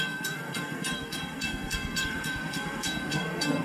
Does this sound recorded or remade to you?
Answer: remade